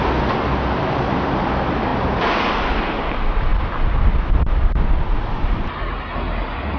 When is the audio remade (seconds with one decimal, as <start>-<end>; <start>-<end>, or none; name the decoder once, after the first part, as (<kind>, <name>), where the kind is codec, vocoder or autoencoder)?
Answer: none